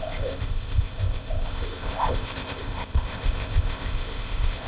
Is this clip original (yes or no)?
no